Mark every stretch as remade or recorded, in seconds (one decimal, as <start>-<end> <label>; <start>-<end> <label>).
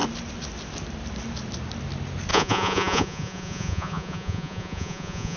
0.0-2.3 recorded; 2.3-5.4 remade